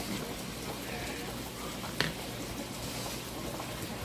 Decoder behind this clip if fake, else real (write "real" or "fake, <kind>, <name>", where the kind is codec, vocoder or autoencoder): real